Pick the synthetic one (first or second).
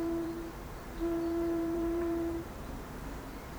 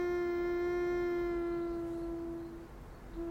first